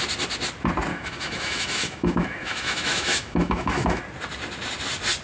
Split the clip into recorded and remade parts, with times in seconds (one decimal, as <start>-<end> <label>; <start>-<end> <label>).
0.0-0.9 recorded; 0.9-4.0 remade; 4.0-5.2 recorded